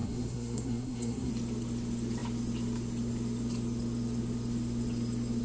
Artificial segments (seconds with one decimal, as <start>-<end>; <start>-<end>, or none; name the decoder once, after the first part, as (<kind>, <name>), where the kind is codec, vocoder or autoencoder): 0.0-1.3 (codec, SNAC)